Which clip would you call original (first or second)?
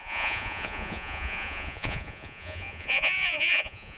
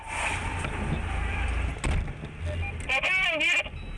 second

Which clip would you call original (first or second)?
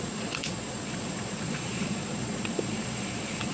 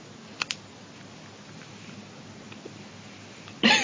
second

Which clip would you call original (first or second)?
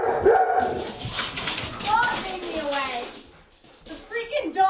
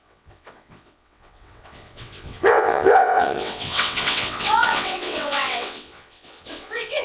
first